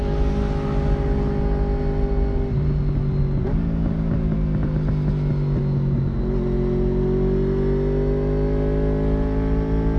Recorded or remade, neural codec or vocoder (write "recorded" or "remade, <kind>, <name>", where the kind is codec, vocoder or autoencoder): recorded